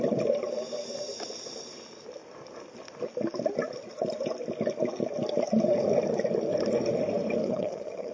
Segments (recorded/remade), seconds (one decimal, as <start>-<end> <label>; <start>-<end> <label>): 0.0-7.4 recorded; 7.4-8.1 remade